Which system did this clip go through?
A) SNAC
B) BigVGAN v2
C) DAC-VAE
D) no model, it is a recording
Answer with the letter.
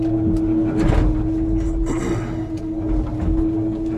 D